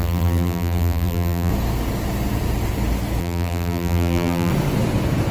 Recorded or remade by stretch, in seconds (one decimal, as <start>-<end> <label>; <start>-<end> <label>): 0.0-1.5 remade; 1.5-3.2 recorded; 3.2-4.5 remade; 4.5-5.3 recorded